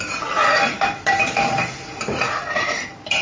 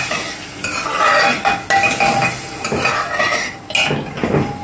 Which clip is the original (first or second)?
second